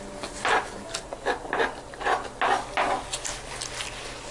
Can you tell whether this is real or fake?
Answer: real